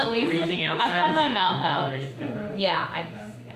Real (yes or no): no